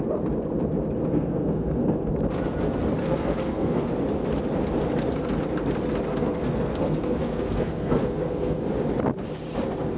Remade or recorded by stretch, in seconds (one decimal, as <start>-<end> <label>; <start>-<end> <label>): 0.0-1.1 recorded; 1.1-2.1 remade; 2.1-3.0 recorded; 3.0-3.9 remade; 3.9-6.1 recorded; 6.1-8.6 remade; 8.6-10.0 recorded